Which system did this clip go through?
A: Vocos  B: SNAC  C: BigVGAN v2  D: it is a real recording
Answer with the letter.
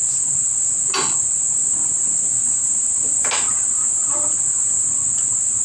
D